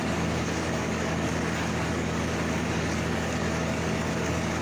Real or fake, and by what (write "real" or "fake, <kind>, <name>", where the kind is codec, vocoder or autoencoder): fake, codec, DAC